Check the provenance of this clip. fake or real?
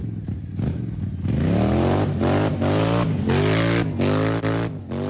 real